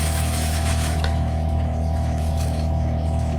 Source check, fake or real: fake